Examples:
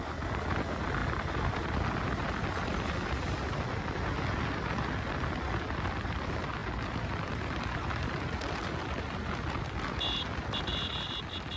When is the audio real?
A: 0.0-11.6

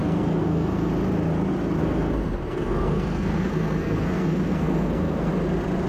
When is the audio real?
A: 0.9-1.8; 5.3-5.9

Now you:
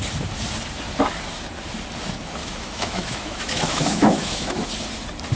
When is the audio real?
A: 0.0-2.4; 4.7-5.4